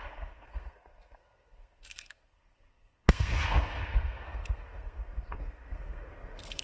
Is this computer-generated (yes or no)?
yes